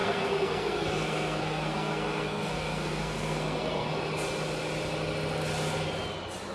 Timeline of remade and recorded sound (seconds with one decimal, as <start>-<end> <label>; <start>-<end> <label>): 0.0-3.9 remade; 3.9-6.5 recorded